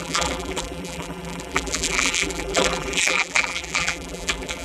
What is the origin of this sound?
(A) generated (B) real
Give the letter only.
A